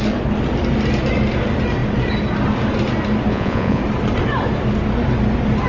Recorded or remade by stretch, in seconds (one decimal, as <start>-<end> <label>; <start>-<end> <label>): 0.0-3.3 recorded; 3.3-3.8 remade; 3.8-5.7 recorded